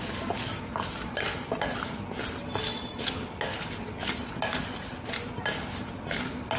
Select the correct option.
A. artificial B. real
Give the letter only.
B